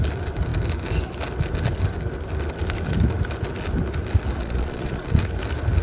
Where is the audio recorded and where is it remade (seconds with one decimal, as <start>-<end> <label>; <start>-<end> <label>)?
0.0-4.4 recorded; 4.4-5.2 remade; 5.2-5.8 recorded